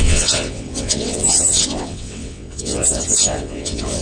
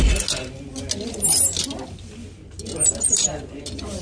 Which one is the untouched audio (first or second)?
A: second